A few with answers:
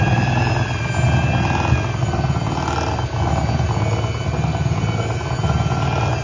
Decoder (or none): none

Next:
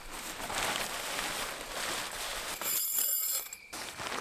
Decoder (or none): none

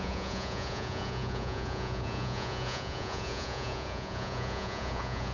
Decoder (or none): vocoder, Vocos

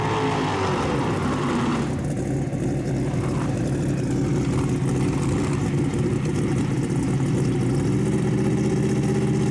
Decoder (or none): none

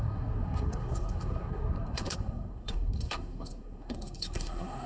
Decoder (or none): codec, SNAC